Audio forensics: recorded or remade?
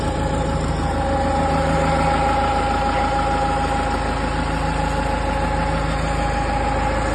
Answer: recorded